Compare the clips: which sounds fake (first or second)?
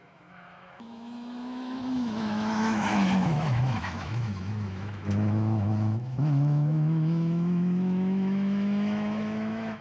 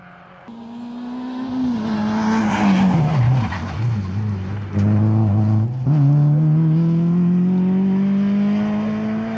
first